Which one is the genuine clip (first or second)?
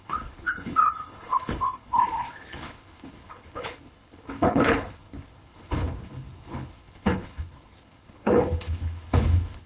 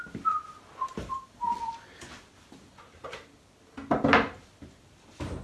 second